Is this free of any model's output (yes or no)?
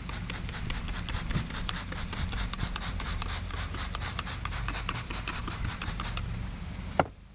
no